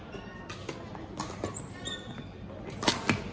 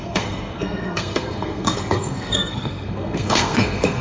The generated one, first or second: second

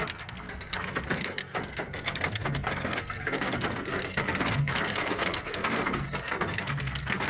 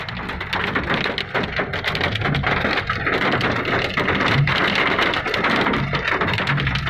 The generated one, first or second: first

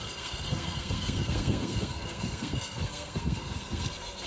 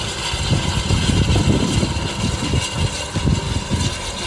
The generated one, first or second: first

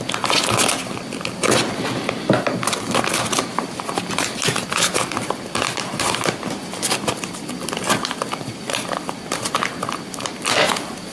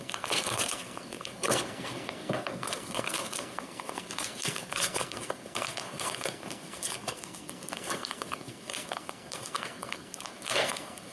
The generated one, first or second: second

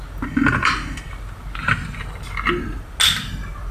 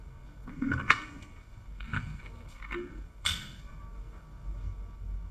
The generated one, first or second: second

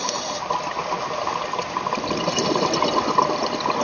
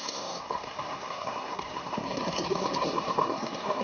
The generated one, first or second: second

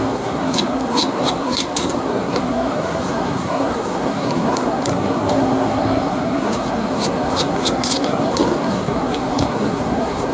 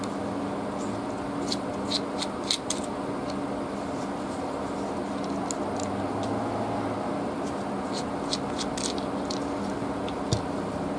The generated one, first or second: first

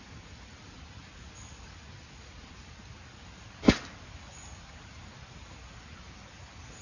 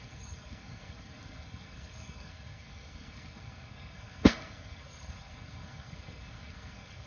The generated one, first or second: second